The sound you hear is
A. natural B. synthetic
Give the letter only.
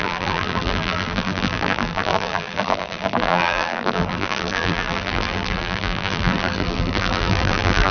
B